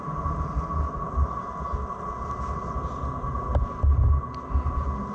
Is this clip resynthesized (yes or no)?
no